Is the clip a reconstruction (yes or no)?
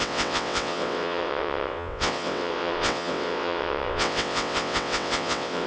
yes